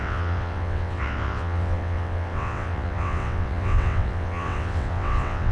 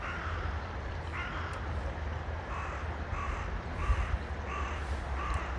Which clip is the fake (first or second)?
first